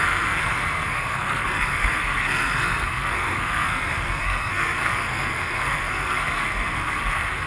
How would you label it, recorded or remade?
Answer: remade